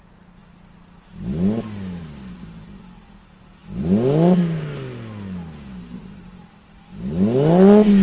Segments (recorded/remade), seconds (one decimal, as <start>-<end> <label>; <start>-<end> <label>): 0.0-8.0 recorded